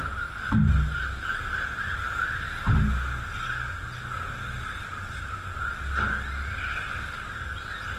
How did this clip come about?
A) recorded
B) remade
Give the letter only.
A